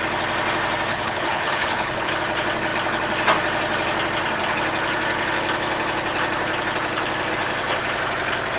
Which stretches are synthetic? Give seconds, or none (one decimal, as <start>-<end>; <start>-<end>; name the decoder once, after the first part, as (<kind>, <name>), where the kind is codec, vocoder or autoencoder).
0.9-2.1 (codec, HILCodec)